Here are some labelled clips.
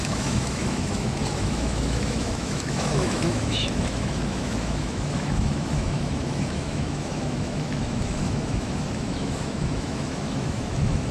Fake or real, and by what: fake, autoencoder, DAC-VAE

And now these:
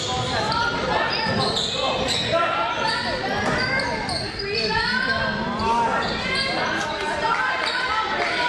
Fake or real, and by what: real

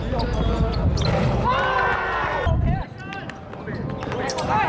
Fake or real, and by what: real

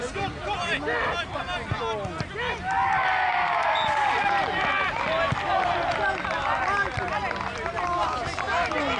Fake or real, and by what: real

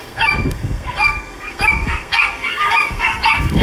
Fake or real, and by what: fake, codec, SNAC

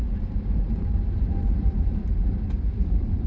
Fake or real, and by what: fake, vocoder, BigVGAN v2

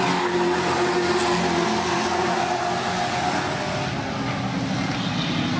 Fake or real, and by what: real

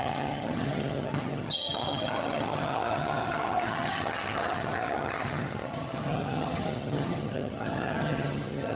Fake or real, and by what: fake, vocoder, HiFi-GAN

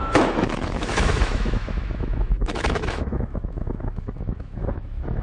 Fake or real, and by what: fake, autoencoder, DAC-VAE